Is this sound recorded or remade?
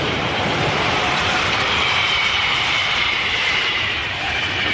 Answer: remade